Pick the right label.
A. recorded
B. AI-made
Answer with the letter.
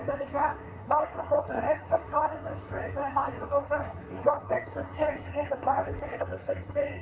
B